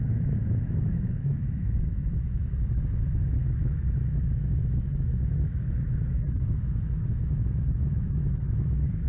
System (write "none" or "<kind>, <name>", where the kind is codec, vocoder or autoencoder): autoencoder, DAC-VAE